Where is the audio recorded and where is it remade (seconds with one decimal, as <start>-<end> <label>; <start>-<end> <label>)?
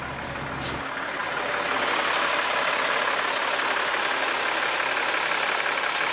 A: 0.0-6.1 recorded